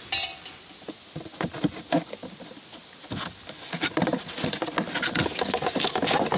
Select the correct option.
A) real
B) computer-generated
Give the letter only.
A